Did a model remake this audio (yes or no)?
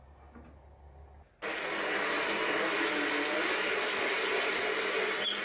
no